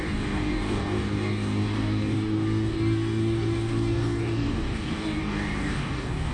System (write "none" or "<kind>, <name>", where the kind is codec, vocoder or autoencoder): codec, DAC